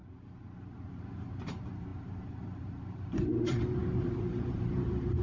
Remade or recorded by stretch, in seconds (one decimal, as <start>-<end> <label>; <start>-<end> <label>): 0.0-0.9 recorded; 0.9-5.2 remade